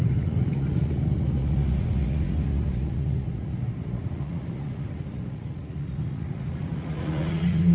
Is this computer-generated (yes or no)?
yes